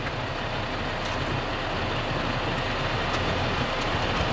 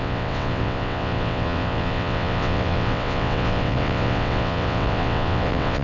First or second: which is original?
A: first